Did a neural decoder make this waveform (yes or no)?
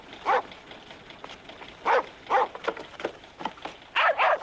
no